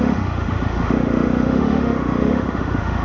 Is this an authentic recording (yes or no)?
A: no